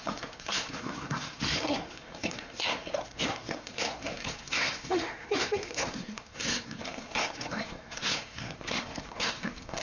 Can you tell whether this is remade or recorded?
remade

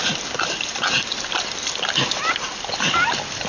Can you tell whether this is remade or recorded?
recorded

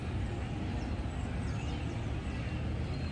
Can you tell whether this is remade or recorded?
recorded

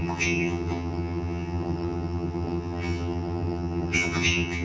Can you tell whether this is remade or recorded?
remade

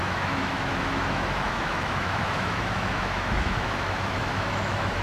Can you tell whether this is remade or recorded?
remade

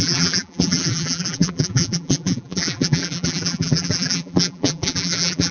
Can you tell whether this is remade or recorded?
remade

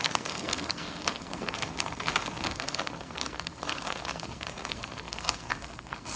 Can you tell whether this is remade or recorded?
remade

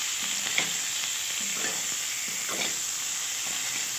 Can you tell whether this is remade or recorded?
recorded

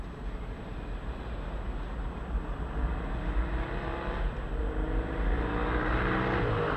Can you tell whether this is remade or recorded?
recorded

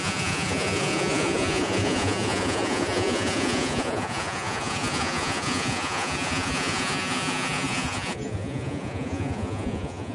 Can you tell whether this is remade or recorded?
remade